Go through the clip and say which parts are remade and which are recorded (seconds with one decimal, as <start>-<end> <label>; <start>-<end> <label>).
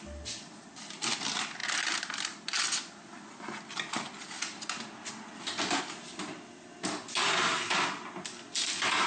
0.0-9.1 recorded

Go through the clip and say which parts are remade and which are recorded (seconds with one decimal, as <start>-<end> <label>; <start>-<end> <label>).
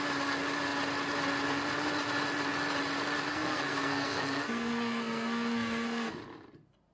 0.0-3.3 recorded; 3.3-6.2 remade; 6.2-6.9 recorded